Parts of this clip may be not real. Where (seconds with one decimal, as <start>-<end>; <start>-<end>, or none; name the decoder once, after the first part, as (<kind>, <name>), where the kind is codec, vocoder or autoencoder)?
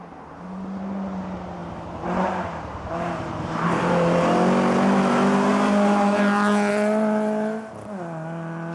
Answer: 1.6-3.8 (vocoder, BigVGAN v2)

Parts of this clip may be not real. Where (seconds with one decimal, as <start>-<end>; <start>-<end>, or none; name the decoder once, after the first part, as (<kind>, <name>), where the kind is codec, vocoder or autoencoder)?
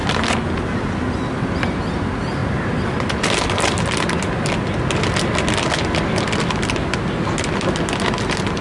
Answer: 0.0-0.6 (vocoder, BigVGAN v2); 2.4-4.6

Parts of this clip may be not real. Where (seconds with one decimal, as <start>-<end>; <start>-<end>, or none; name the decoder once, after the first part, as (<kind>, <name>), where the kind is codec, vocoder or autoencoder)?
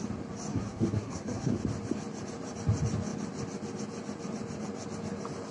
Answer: 0.5-1.6 (codec, SNAC)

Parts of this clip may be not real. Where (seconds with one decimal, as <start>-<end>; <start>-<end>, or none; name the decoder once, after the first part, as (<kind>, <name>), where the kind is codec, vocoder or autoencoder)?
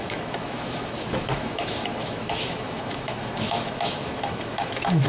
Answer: 0.0-5.1 (autoencoder, DAC-VAE)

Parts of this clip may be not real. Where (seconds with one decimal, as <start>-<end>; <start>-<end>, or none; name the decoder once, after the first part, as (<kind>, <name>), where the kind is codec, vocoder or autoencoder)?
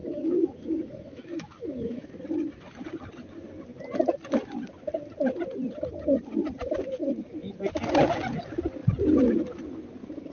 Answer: 0.0-2.1 (autoencoder, DAC-VAE)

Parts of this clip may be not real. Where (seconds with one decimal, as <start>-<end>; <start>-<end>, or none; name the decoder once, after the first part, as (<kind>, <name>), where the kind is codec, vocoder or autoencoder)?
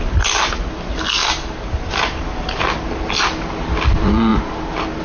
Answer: none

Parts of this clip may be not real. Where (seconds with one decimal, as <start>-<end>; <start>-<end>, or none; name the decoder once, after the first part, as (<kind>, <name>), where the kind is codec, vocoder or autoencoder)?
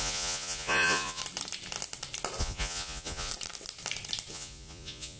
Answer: 0.0-1.2 (vocoder, Vocos); 2.4-3.3; 4.3-5.2